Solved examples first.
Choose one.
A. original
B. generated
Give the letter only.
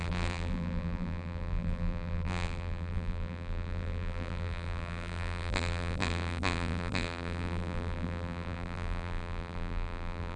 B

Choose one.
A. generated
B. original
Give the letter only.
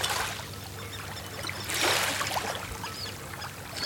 B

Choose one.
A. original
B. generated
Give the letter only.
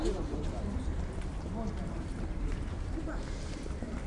B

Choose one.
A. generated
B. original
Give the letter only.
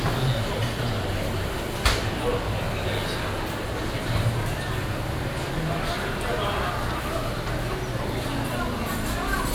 B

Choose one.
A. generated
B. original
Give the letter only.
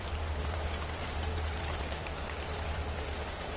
A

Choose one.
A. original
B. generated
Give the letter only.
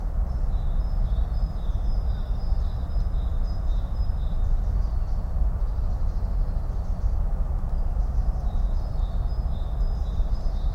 A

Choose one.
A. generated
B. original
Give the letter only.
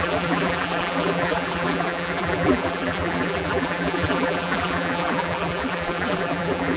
A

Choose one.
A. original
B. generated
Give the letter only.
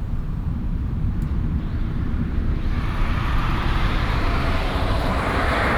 B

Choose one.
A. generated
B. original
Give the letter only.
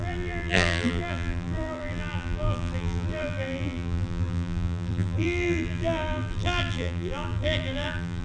A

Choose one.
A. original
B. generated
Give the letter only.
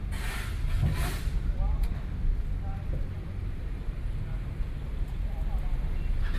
A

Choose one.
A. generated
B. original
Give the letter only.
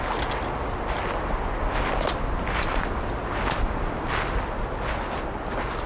B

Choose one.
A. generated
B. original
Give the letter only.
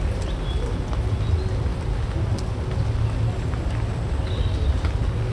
B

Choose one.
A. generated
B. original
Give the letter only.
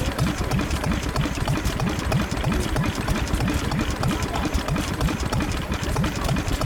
A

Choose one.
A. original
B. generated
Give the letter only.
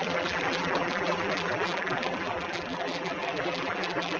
B